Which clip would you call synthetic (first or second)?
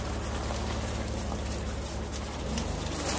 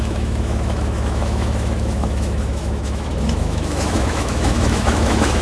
second